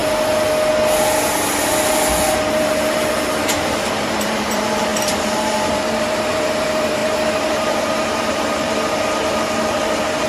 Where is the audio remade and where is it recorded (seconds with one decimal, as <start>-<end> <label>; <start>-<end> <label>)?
0.0-2.6 recorded; 2.6-10.3 remade